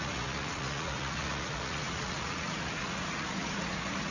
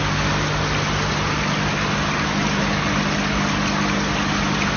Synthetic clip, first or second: first